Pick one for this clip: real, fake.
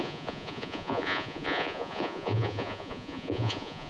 fake